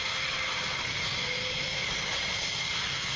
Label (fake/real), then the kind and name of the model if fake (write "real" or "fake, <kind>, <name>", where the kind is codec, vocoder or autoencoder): real